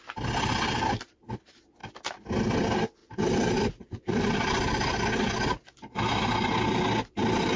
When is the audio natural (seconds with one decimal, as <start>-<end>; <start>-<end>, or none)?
0.0-3.0; 4.3-7.6